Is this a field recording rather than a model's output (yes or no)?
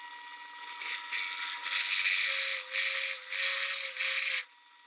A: yes